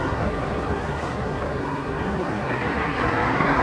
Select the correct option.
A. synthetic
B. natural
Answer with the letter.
A